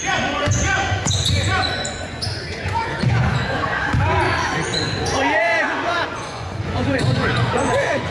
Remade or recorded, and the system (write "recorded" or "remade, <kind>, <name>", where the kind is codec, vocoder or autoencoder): remade, vocoder, Vocos